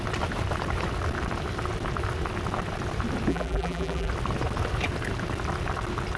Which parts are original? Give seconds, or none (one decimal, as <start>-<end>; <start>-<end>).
0.0-3.3; 4.1-6.2